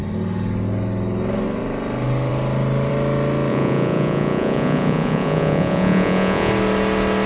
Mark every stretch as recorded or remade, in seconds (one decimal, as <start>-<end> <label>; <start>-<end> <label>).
0.0-3.5 recorded; 3.5-6.5 remade; 6.5-7.3 recorded